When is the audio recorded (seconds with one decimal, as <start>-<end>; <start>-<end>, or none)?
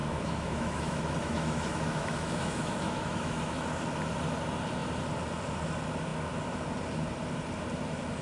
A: 3.6-8.2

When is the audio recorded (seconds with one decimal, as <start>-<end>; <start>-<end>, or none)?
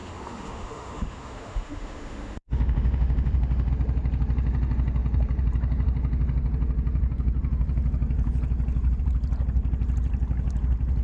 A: 3.7-11.0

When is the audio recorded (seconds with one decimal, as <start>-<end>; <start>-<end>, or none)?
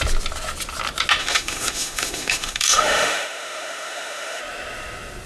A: 0.0-1.2; 4.4-5.3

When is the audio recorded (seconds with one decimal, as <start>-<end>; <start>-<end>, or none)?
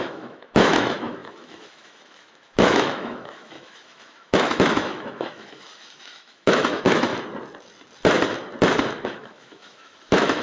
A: 7.1-9.0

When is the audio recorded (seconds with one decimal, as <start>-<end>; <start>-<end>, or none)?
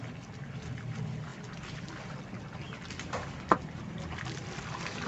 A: 0.0-5.1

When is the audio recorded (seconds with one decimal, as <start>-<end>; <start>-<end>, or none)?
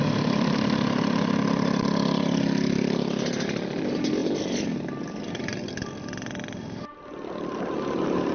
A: 0.0-8.3